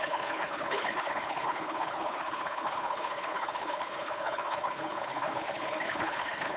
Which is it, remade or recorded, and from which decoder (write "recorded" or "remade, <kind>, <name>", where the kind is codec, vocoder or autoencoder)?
remade, codec, HILCodec